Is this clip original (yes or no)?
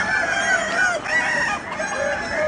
yes